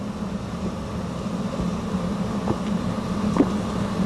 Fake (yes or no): no